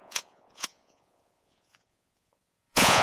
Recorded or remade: remade